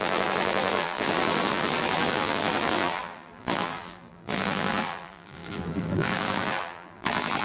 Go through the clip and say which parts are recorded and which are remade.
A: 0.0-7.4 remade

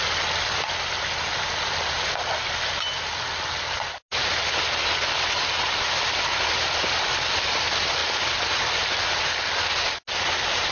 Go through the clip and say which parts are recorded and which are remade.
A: 0.0-10.7 recorded